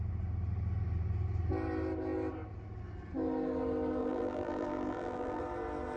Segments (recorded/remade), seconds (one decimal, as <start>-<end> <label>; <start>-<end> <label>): 0.0-4.0 recorded; 4.0-5.4 remade; 5.4-6.0 recorded